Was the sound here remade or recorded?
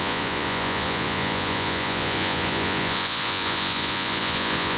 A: remade